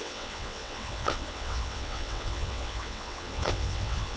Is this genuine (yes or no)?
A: no